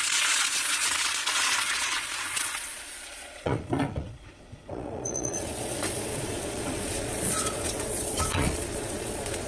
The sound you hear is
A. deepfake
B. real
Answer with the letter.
A